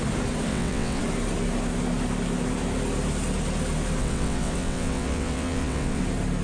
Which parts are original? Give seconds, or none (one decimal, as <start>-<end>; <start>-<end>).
0.0-0.5; 1.0-4.0; 6.0-6.4